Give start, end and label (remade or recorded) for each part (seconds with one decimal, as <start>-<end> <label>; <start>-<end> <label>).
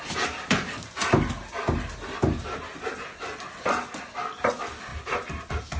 0.0-5.8 recorded